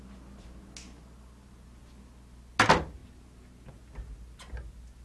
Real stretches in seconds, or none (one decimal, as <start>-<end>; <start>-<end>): 0.0-5.0